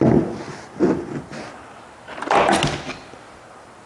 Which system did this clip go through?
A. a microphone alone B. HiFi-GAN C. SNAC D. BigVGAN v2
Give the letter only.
A